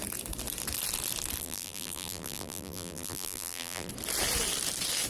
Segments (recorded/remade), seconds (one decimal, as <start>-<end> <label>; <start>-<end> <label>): 0.0-1.4 recorded; 1.4-3.9 remade; 3.9-5.1 recorded